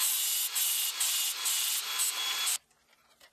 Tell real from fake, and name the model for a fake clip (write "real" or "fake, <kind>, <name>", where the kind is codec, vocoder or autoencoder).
fake, vocoder, BigVGAN v2